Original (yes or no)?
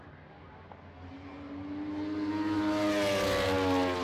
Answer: yes